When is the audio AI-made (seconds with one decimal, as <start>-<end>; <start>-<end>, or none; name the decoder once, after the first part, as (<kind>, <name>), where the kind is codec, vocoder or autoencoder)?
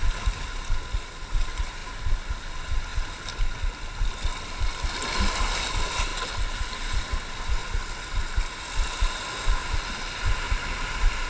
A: none